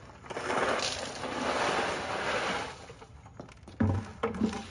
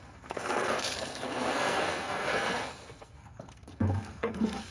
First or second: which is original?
first